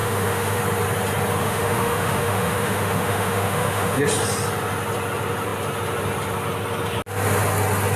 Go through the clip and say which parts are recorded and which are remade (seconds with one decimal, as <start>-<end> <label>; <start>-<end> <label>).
0.0-0.6 remade; 0.6-1.4 recorded; 1.4-4.0 remade; 4.0-8.0 recorded